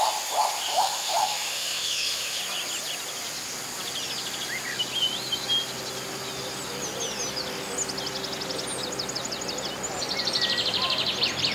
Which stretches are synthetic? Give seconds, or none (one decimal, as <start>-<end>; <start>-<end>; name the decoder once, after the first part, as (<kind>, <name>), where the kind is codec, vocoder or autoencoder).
0.7-2.4 (autoencoder, DAC-VAE)